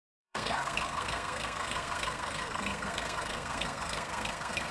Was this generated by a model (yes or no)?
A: yes